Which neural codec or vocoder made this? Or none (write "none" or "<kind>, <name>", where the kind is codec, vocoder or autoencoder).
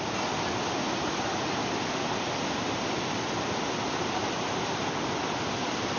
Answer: none